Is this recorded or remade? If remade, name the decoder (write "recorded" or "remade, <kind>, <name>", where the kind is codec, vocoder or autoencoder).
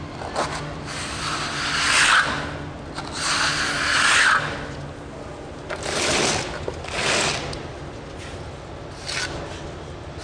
recorded